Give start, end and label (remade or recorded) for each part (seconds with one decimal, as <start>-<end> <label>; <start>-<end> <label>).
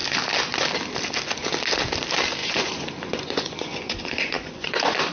0.0-2.4 recorded; 2.4-5.1 remade